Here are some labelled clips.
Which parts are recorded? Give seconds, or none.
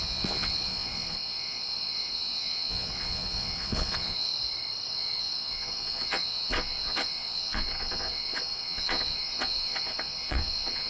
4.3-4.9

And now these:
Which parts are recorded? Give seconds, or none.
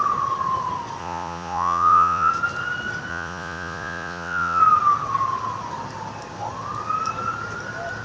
0.0-1.0; 2.3-3.1; 4.6-8.0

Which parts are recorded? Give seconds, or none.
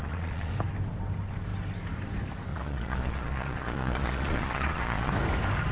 0.5-2.5; 5.1-5.7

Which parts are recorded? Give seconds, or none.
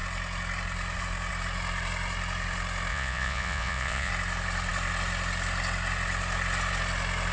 0.0-2.9; 4.1-7.3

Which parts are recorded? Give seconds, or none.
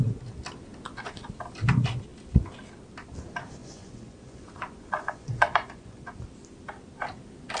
0.0-3.6; 6.0-7.6